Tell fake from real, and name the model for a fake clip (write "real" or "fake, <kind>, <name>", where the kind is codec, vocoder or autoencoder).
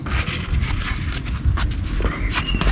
real